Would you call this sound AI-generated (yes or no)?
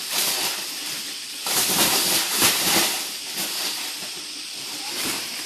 yes